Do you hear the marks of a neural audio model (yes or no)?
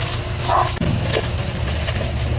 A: no